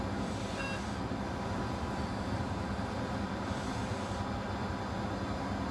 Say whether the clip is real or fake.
real